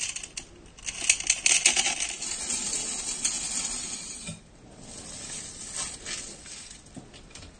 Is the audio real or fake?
real